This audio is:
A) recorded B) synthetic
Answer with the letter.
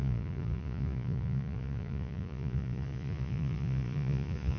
B